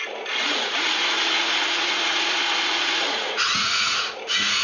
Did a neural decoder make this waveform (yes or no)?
yes